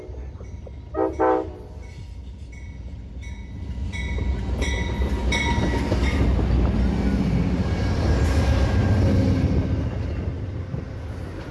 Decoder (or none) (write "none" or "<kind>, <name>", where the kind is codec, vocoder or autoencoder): none